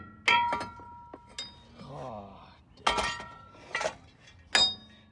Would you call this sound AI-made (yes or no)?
no